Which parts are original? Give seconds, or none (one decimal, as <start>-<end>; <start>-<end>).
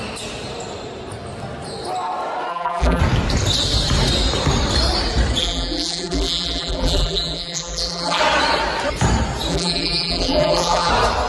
0.0-2.5; 3.0-5.4; 8.2-9.5; 10.9-11.3